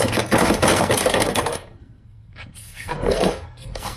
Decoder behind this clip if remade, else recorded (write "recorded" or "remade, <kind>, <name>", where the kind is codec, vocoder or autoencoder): remade, codec, SNAC